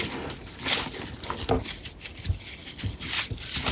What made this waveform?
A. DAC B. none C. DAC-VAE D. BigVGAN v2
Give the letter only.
B